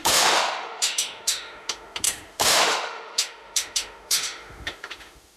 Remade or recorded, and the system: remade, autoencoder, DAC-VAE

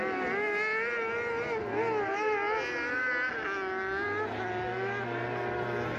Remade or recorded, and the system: recorded